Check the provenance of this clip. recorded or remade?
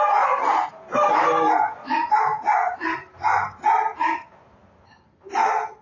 recorded